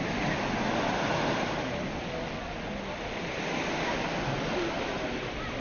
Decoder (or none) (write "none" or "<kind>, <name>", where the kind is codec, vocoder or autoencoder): none